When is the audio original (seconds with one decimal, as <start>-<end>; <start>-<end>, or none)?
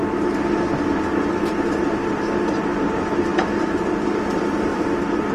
0.0-1.5